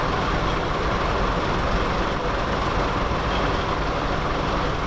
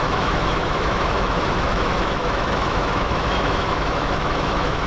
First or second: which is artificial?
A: second